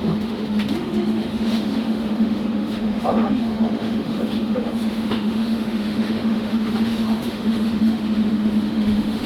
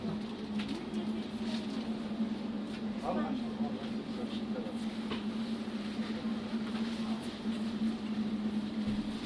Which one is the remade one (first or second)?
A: first